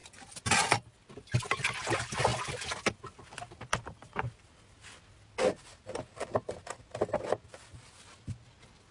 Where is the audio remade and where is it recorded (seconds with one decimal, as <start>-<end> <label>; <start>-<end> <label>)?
0.0-8.9 recorded